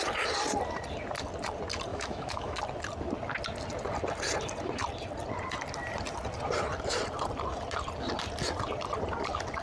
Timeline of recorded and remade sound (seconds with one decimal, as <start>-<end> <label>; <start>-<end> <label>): 0.0-1.9 recorded; 1.9-2.6 remade; 2.6-9.6 recorded